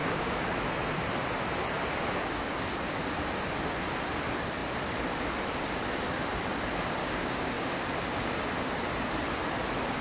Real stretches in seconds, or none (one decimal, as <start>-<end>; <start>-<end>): 0.6-7.0; 7.8-10.0